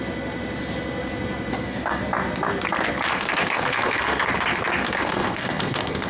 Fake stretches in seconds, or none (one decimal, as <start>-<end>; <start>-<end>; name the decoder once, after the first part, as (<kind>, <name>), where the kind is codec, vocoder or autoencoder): 1.5-2.0 (codec, SNAC); 3.1-4.3; 4.8-6.1